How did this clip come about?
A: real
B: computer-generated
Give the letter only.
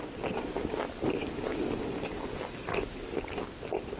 A